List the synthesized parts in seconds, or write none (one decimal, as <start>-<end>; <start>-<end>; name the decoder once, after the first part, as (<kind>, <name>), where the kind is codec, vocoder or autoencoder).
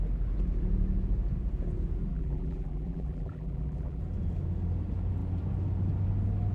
2.1-4.0 (vocoder, BigVGAN v2)